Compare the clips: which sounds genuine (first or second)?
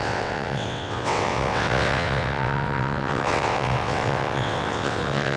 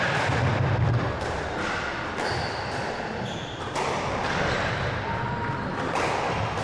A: second